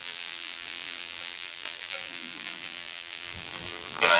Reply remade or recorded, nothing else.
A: remade